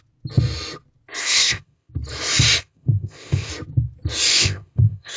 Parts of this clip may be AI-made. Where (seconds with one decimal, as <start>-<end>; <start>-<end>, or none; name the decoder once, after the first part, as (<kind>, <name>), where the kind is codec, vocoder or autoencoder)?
1.2-1.9 (codec, ZipCodec); 2.6-3.5; 4.3-5.2